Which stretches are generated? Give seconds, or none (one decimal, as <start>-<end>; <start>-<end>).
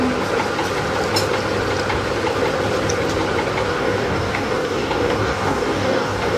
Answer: 3.7-6.4